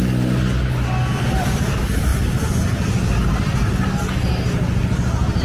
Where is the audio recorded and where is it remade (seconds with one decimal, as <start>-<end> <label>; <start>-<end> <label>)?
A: 0.0-5.4 recorded